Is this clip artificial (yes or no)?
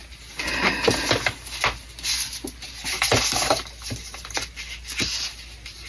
no